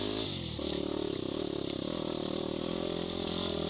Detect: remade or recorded recorded